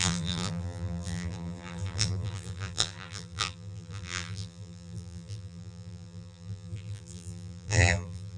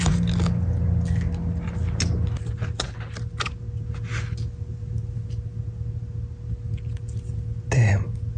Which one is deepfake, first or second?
first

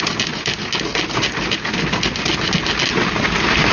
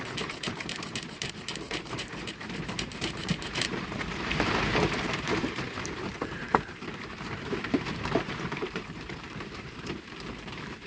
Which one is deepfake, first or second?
second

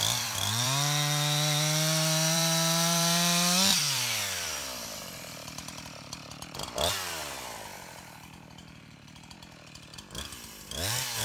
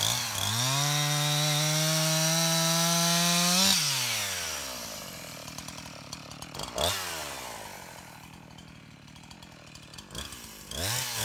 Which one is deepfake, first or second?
first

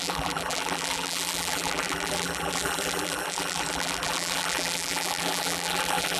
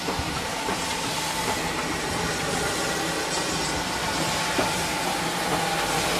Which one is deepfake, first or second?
first